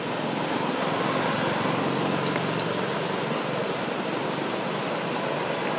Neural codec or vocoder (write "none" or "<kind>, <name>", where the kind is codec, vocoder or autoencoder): none